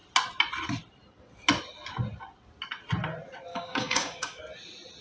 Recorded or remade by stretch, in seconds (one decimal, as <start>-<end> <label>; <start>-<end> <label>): 0.0-3.5 recorded; 3.5-4.4 remade; 4.4-5.0 recorded